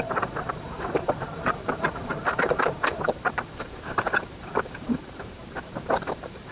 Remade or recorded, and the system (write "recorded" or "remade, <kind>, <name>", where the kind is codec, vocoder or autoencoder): remade, vocoder, BigVGAN v2